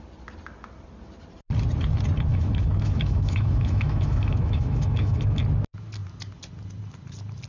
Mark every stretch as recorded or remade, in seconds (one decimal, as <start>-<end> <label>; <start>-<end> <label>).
0.0-2.3 recorded; 2.3-5.4 remade; 5.4-7.5 recorded